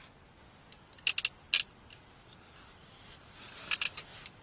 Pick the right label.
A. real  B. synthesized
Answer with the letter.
A